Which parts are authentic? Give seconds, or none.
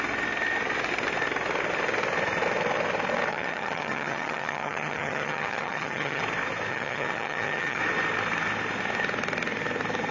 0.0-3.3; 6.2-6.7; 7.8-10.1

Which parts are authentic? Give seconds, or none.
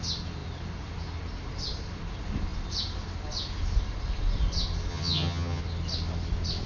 0.0-4.9; 5.6-6.7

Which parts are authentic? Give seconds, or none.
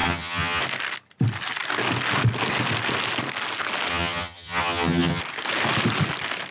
0.6-3.9; 5.2-6.5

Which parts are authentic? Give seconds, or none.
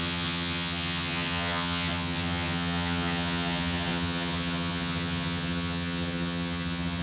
none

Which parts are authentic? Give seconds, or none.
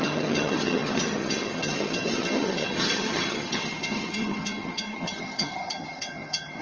none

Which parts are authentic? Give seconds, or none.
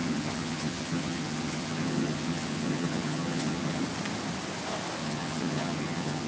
3.8-5.0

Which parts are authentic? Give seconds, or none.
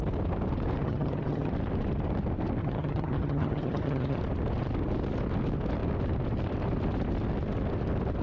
0.0-0.8; 1.5-2.6; 4.2-8.2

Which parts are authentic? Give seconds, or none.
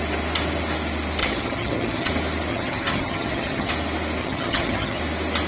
0.0-1.2; 2.1-2.5; 3.7-4.2; 5.0-5.5